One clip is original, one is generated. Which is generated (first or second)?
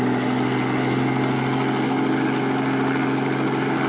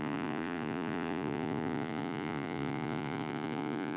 second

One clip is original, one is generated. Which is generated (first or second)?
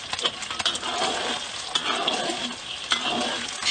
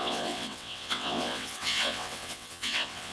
second